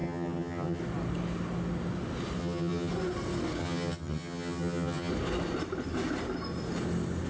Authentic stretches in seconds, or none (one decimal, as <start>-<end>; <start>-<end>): 0.8-2.4; 2.9-3.6; 5.1-7.3